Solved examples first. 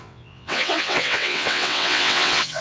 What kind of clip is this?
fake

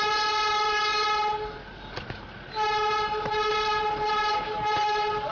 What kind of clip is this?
real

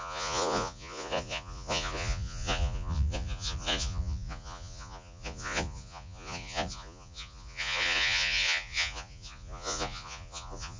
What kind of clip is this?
fake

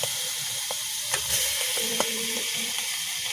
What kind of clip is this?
fake